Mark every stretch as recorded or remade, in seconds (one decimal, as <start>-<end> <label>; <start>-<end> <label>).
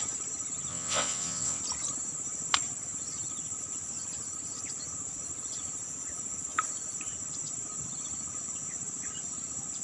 0.0-0.7 recorded; 0.7-1.6 remade; 1.6-9.8 recorded